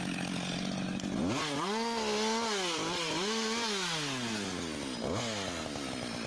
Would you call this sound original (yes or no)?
yes